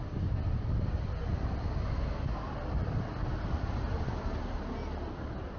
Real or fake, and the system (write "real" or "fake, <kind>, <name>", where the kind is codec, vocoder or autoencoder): real